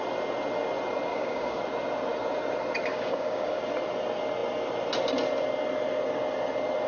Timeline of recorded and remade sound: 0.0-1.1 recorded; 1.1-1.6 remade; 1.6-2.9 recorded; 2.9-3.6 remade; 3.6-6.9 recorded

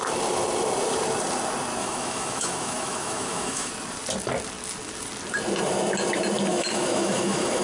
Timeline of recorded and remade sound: 0.0-1.8 recorded; 1.8-3.7 remade; 3.7-6.5 recorded; 6.5-7.6 remade

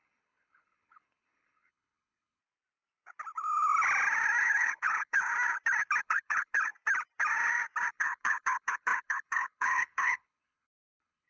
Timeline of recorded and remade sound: 0.0-2.4 remade; 2.4-4.4 recorded; 4.4-5.3 remade; 5.3-6.0 recorded; 6.0-6.7 remade; 6.7-7.9 recorded; 7.9-11.3 remade

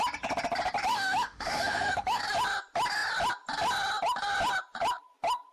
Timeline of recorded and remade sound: 0.0-0.9 recorded; 0.9-2.2 remade; 2.2-5.5 recorded